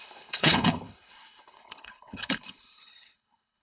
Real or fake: fake